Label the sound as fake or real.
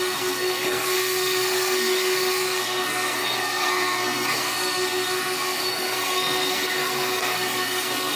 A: fake